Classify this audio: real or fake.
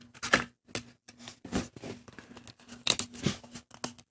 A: real